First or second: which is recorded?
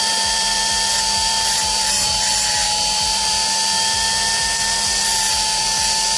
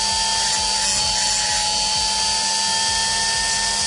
second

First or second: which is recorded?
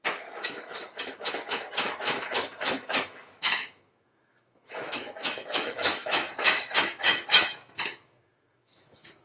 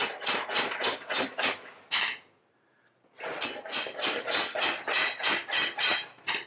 second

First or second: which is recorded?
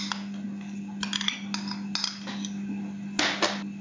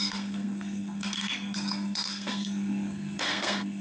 first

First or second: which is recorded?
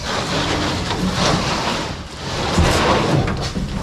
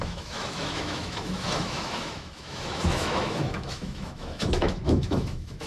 first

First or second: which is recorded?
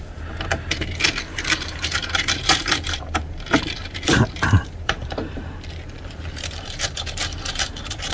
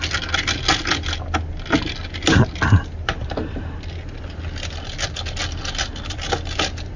second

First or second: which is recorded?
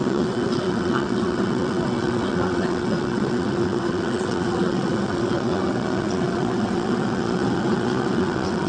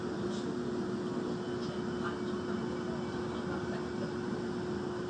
second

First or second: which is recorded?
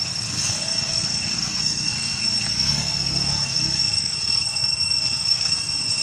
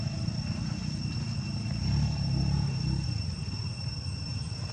second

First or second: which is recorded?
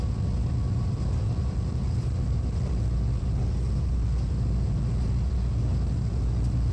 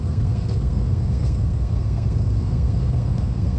first